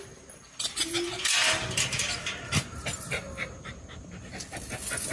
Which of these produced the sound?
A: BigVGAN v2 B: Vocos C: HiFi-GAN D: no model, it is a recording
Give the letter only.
D